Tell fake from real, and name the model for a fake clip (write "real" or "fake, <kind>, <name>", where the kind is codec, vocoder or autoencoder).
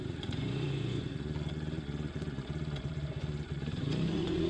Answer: fake, vocoder, Vocos